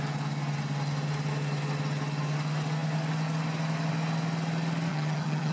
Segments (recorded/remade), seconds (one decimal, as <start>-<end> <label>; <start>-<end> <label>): 0.0-4.9 recorded; 4.9-5.5 remade